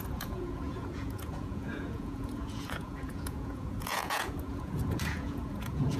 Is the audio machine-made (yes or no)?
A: yes